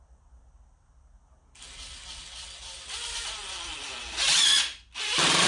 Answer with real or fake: real